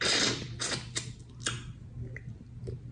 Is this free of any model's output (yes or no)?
yes